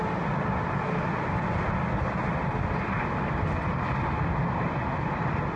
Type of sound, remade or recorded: recorded